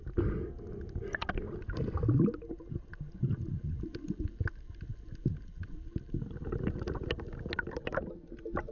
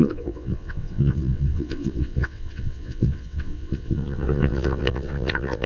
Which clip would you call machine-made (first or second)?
second